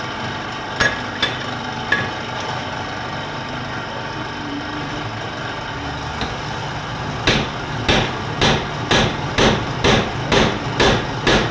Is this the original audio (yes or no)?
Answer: yes